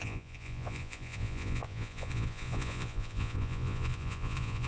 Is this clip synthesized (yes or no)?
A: yes